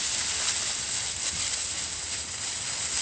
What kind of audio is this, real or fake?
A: real